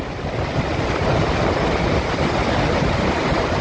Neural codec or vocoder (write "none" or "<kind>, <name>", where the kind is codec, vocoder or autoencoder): none